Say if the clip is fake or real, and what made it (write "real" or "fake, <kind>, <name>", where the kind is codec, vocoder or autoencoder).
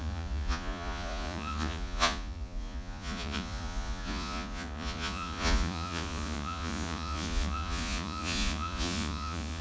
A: fake, vocoder, Vocos